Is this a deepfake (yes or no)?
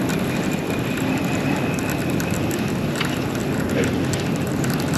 no